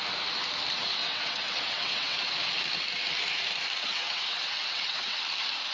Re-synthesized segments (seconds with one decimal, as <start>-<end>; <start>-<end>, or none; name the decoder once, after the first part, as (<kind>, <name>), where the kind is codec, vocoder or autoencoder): 1.0-2.2 (vocoder, WaveNeXt); 3.8-5.2